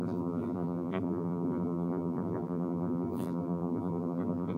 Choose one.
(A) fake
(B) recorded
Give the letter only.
A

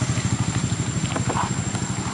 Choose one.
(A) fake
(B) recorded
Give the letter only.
B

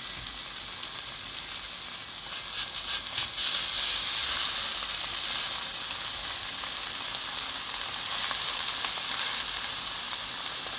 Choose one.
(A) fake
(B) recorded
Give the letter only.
B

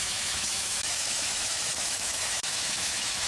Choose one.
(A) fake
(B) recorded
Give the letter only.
A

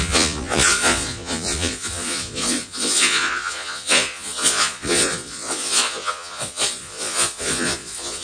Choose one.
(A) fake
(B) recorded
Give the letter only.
A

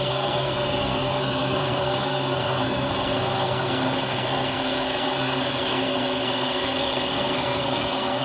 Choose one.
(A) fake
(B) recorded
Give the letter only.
A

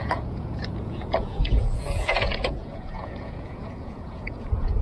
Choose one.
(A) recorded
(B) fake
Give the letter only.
B